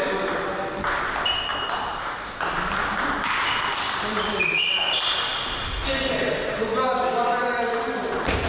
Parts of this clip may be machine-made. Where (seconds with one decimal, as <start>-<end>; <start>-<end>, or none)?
1.5-2.4